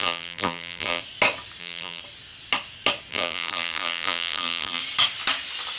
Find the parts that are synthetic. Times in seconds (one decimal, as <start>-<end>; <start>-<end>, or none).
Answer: 0.0-1.0; 1.6-2.0; 3.1-4.8